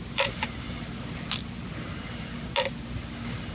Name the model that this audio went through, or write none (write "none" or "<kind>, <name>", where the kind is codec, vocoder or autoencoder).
none